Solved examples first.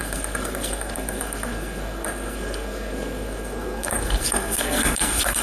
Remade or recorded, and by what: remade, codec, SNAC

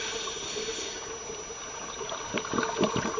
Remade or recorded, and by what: recorded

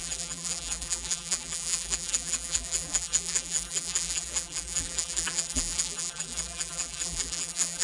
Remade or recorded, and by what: remade, vocoder, BigVGAN v2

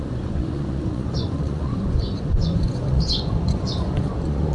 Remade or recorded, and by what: remade, vocoder, Vocos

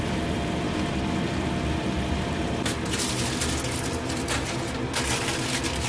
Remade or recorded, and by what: recorded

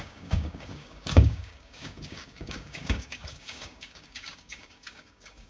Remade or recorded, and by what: remade, codec, DAC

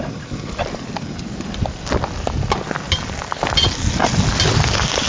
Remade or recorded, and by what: recorded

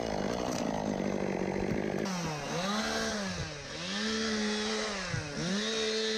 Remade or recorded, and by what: recorded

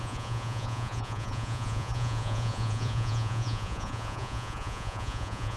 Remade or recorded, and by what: remade, vocoder, Vocos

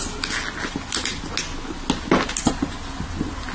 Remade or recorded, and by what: recorded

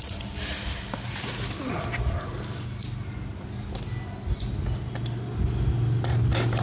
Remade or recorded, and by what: recorded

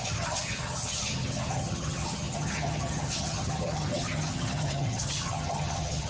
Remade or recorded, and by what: remade, vocoder, HiFi-GAN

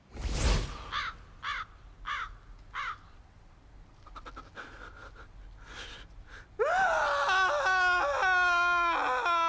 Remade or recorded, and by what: recorded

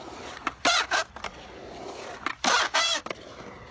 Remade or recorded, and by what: recorded